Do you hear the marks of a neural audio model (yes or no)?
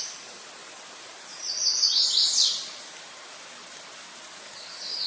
no